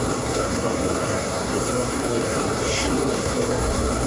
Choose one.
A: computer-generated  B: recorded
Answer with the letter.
A